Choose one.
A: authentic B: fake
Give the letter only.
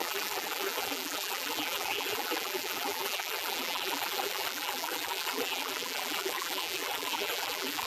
B